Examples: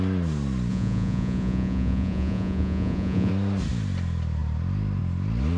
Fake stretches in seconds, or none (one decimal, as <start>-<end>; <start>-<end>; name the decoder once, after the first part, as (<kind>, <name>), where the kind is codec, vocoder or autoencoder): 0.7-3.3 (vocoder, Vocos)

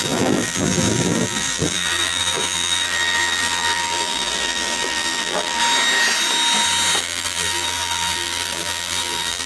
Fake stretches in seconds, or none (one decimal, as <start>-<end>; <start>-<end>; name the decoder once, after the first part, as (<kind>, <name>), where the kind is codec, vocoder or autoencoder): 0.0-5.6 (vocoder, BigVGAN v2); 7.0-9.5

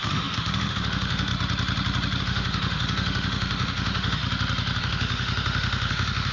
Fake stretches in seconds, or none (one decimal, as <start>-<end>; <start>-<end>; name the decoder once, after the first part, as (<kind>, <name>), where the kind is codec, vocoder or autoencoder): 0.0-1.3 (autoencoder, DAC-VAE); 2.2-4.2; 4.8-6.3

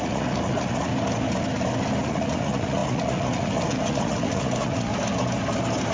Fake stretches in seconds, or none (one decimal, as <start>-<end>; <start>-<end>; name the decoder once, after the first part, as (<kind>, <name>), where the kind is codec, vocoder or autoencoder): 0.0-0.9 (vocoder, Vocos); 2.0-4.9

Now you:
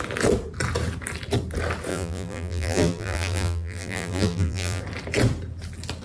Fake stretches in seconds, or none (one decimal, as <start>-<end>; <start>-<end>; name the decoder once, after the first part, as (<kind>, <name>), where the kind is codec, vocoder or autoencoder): 1.9-4.8 (vocoder, BigVGAN v2)

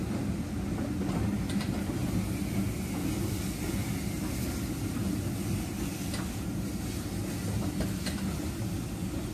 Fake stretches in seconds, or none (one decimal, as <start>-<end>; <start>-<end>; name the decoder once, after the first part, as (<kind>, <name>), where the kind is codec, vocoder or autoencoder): none

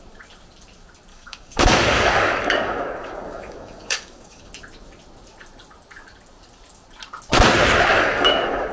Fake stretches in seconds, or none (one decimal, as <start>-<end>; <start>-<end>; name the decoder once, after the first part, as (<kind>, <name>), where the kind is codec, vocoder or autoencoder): 1.1-4.5 (codec, DAC); 7.9-8.7